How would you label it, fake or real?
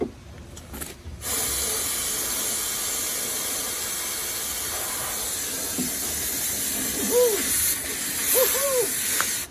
real